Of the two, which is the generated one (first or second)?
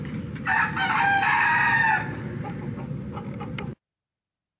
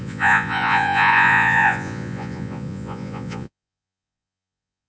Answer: second